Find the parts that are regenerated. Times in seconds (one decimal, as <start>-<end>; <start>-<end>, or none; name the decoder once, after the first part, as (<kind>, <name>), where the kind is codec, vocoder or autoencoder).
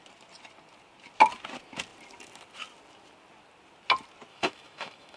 4.3-5.2 (autoencoder, DAC-VAE)